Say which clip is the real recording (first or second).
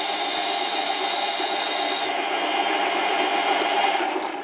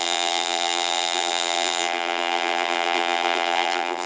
first